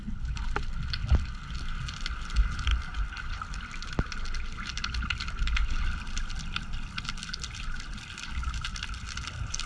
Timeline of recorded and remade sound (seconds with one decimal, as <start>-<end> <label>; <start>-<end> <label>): 0.0-9.7 recorded

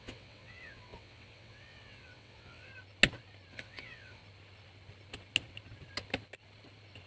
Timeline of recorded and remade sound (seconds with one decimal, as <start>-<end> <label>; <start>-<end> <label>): 0.0-2.7 remade; 2.7-3.5 recorded; 3.5-4.2 remade; 4.2-7.1 recorded

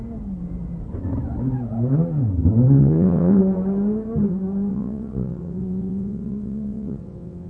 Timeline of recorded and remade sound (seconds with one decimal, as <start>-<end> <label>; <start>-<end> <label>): 0.0-2.8 recorded; 2.8-3.4 remade; 3.4-4.7 recorded; 4.7-7.5 remade

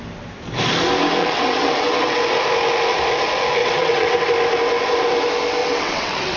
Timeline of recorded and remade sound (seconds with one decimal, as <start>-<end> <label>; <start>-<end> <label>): 0.0-1.2 recorded; 1.2-2.2 remade; 2.2-3.6 recorded; 3.6-4.3 remade; 4.3-5.6 recorded; 5.6-6.4 remade

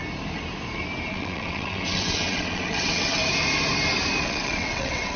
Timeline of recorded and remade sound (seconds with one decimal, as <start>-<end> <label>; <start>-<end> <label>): 0.0-1.1 recorded; 1.1-3.2 remade; 3.2-4.2 recorded; 4.2-5.2 remade